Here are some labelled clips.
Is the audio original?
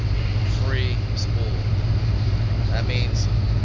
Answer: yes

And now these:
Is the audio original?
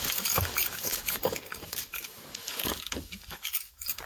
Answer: no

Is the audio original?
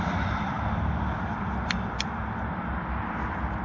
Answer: yes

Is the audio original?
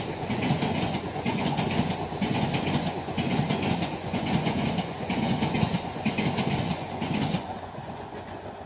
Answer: no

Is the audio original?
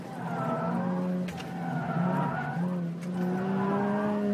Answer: yes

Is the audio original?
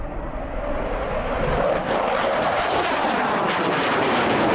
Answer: no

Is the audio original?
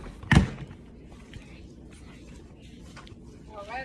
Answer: yes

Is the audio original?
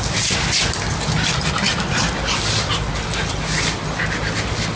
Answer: yes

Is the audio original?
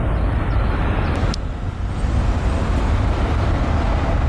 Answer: yes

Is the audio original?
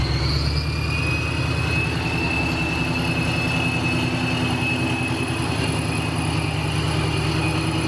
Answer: yes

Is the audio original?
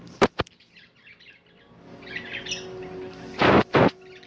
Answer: yes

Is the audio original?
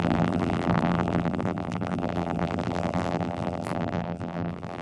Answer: no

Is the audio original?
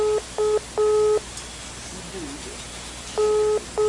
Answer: yes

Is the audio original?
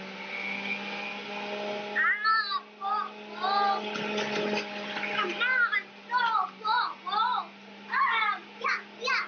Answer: yes